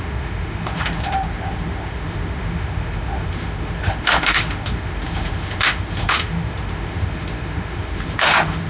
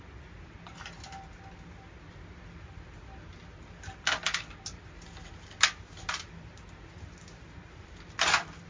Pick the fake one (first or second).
first